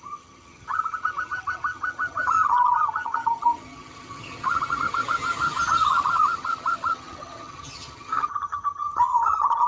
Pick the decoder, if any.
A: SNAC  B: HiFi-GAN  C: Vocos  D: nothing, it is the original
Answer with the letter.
B